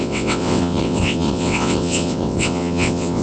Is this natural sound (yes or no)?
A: no